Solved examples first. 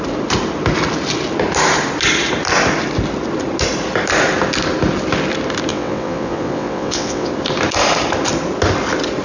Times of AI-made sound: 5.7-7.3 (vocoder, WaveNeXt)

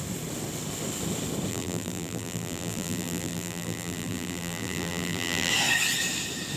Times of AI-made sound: 1.5-5.5 (vocoder, BigVGAN v2)

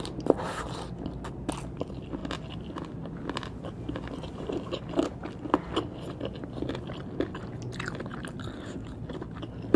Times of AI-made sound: none

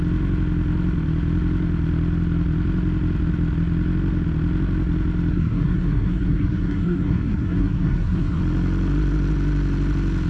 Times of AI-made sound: 5.3-8.4 (codec, SNAC)